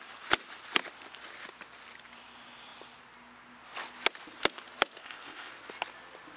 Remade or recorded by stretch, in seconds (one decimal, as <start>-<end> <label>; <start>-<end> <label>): 0.0-5.0 recorded; 5.0-5.5 remade; 5.5-6.4 recorded